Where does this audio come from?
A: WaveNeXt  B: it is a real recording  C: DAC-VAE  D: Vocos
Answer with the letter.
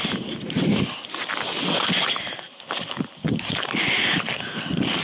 B